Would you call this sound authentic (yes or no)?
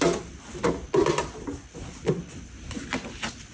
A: yes